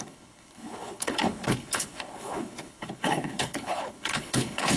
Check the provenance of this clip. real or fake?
fake